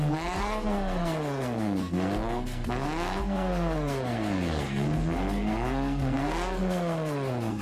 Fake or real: fake